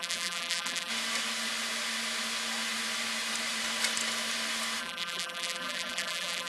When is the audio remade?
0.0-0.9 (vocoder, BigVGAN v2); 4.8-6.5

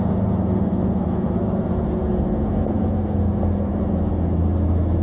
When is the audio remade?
none

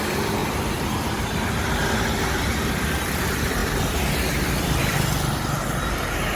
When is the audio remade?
0.4-1.8 (vocoder, BigVGAN v2); 2.5-3.2

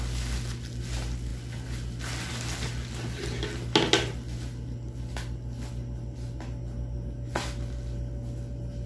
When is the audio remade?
none

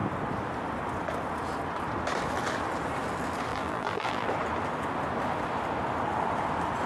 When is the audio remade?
3.5-4.3 (vocoder, BigVGAN v2)

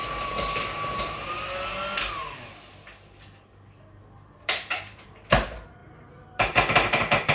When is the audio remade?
4.4-7.3 (vocoder, BigVGAN v2)

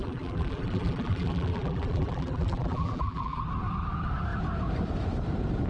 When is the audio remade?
0.0-3.4 (vocoder, BigVGAN v2)